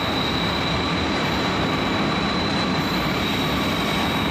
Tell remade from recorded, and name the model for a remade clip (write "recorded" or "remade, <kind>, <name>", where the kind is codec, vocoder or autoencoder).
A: remade, vocoder, BigVGAN v2